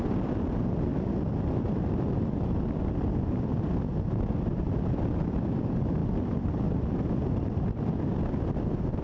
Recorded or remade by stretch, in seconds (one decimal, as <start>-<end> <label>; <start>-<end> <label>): 0.0-9.0 recorded